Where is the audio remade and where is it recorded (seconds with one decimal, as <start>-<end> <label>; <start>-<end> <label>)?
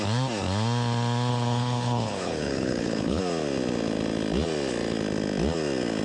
0.0-1.3 recorded; 1.3-3.2 remade; 3.2-6.0 recorded